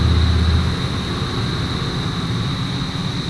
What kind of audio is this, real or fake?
real